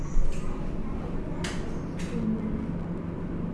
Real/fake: real